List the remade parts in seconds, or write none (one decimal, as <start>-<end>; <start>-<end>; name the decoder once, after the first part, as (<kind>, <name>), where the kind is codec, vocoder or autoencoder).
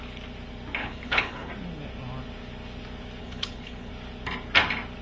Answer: 0.8-1.5 (codec, HILCodec); 3.2-3.9